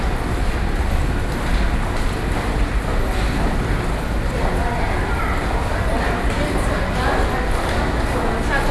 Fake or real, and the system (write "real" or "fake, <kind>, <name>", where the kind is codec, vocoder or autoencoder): real